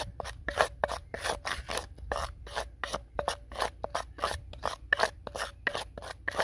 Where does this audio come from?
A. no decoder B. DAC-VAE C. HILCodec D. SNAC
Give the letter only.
A